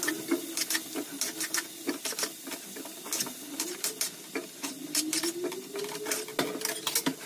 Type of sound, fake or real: real